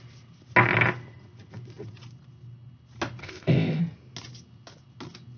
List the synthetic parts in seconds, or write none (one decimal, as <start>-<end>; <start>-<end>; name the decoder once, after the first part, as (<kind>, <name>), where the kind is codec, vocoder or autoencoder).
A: 3.2-3.8 (codec, ZipCodec)